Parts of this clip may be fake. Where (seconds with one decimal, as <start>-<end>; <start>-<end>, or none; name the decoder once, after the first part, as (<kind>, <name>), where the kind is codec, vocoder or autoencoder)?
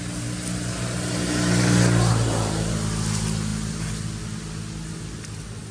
2.1-2.7 (vocoder, BigVGAN v2)